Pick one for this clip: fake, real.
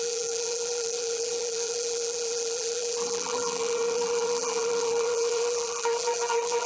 fake